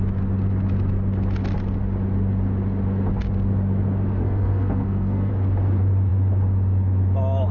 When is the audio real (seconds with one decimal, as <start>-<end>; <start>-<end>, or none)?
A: 0.0-4.2; 5.3-7.5